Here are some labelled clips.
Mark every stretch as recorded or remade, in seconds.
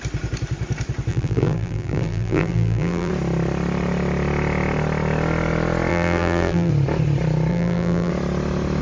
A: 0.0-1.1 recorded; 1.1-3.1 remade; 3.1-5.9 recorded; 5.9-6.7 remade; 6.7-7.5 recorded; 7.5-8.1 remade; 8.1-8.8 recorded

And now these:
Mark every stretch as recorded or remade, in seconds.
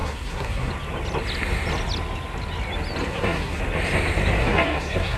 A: 0.0-0.7 remade; 0.7-3.0 recorded; 3.0-3.6 remade; 3.6-4.4 recorded; 4.4-5.2 remade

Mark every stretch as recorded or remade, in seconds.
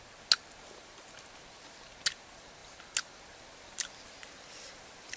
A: 0.0-5.2 recorded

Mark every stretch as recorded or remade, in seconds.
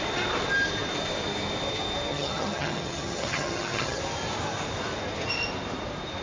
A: 0.0-2.1 recorded; 2.1-4.0 remade; 4.0-6.2 recorded